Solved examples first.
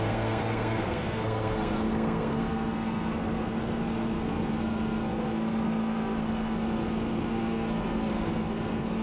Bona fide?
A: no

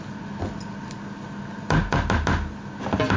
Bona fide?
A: yes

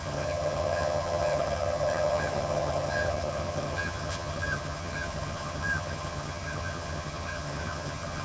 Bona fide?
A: no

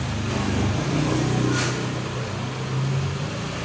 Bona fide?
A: yes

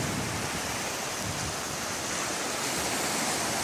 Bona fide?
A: yes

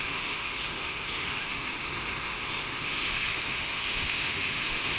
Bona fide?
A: no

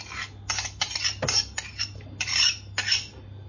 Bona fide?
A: yes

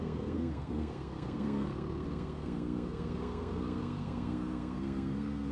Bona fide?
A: no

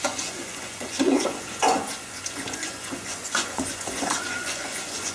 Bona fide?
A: no